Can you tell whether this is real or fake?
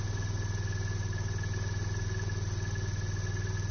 real